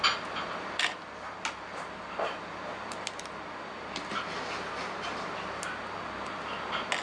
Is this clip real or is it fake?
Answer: real